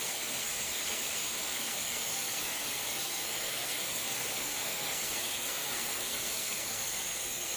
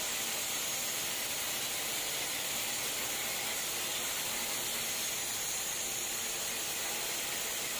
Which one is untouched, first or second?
second